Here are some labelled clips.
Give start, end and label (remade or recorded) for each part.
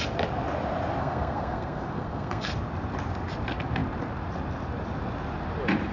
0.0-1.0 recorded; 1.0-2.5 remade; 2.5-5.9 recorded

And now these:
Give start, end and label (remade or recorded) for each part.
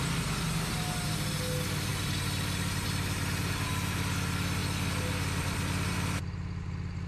0.0-7.1 recorded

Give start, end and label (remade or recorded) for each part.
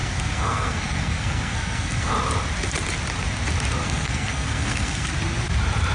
0.0-2.1 remade; 2.1-3.8 recorded; 3.8-5.1 remade; 5.1-5.9 recorded